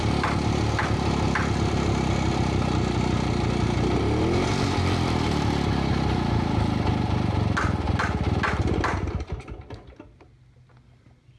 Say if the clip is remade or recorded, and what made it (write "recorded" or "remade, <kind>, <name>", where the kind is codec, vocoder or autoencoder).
recorded